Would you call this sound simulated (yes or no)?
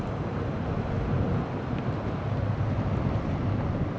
no